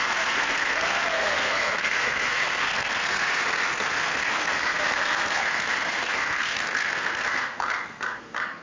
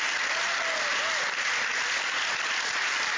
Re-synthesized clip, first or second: first